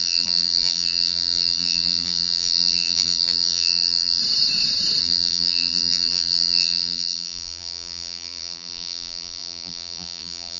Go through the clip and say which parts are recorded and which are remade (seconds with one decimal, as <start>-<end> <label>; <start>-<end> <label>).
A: 0.0-4.2 remade; 4.2-5.0 recorded; 5.0-10.6 remade

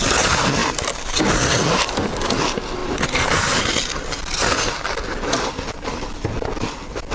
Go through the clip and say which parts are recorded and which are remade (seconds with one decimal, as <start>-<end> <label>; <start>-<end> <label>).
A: 0.0-0.6 recorded; 0.6-1.2 remade; 1.2-2.8 recorded; 2.8-3.6 remade; 3.6-7.1 recorded